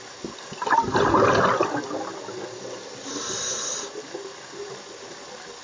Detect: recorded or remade recorded